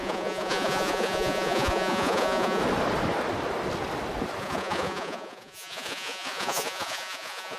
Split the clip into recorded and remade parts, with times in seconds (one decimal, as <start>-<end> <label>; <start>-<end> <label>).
0.0-2.6 remade; 2.6-4.4 recorded; 4.4-7.6 remade